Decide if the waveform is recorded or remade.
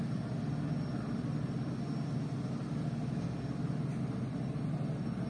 recorded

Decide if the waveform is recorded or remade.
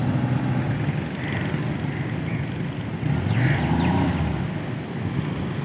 recorded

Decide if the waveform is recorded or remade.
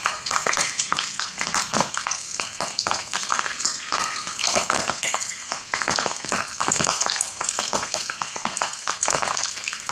remade